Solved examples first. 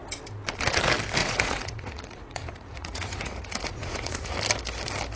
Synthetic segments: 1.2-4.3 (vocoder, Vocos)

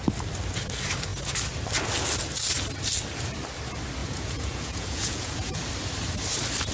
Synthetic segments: 4.0-5.6 (vocoder, Vocos)

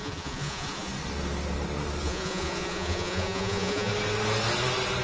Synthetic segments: 0.0-0.9 (vocoder, Vocos); 2.0-3.9

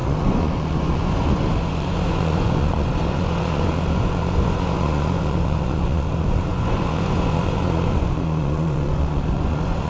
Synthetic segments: 0.0-9.9 (vocoder, Vocos)

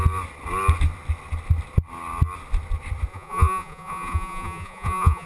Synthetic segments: 3.1-5.3 (vocoder, Vocos)

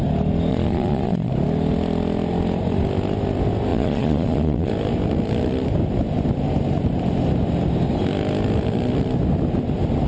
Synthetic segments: 0.5-1.3 (vocoder, Vocos); 3.7-4.7